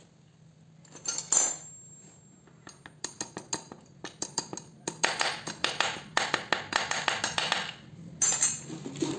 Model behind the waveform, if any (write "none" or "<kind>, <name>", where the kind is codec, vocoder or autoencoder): none